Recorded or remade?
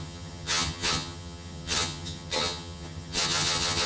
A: remade